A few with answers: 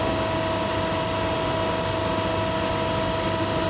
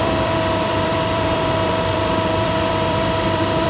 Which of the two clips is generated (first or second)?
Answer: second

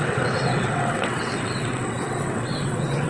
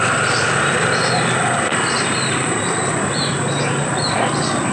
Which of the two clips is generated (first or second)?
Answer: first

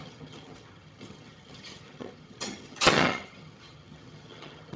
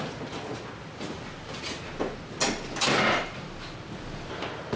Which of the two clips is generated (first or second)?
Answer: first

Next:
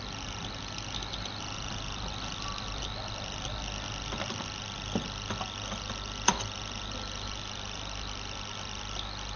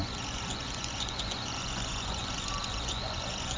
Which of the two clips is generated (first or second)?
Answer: second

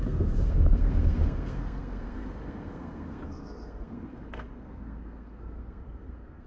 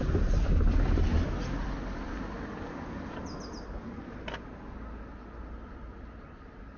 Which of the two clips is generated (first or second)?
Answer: first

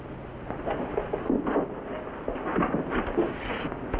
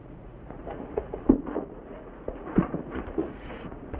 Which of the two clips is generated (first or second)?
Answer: second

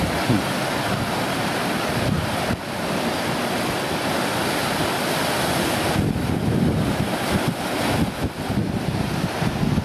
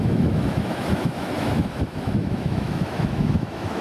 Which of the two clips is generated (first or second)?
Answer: second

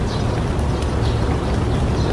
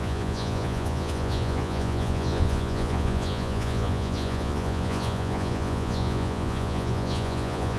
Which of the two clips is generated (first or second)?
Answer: second